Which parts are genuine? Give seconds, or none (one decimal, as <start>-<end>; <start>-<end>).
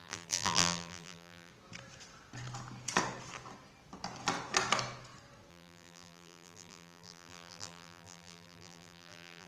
1.5-5.5